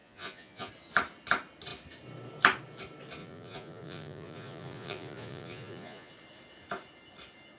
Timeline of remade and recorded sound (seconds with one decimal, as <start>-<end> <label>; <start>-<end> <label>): 0.0-0.7 remade; 0.7-3.2 recorded; 3.2-6.1 remade; 6.1-7.6 recorded